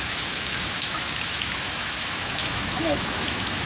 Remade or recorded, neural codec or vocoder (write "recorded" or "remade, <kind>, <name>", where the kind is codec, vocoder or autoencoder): remade, autoencoder, DAC-VAE